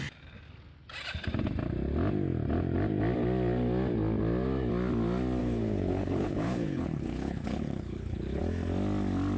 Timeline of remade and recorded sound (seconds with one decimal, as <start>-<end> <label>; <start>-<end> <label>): 0.0-5.4 recorded; 5.4-8.4 remade; 8.4-9.4 recorded